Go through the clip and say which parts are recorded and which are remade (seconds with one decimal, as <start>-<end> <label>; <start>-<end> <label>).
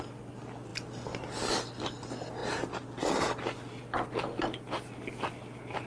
0.0-5.9 recorded